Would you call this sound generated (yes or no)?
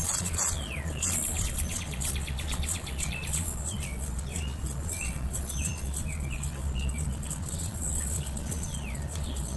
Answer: yes